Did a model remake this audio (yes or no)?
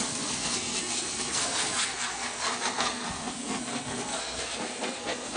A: yes